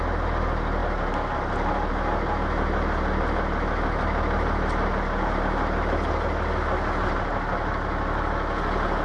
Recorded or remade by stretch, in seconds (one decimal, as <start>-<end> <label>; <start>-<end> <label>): 0.0-9.0 recorded